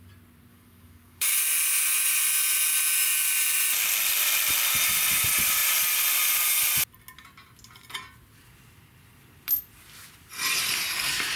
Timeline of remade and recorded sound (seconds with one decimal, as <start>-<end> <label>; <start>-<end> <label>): 0.0-0.5 recorded; 0.5-1.4 remade; 1.4-11.4 recorded